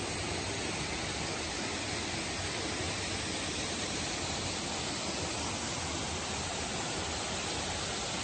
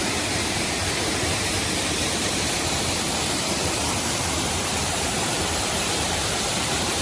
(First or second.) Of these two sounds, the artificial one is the second